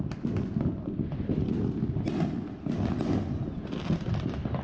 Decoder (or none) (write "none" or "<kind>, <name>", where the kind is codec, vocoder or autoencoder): none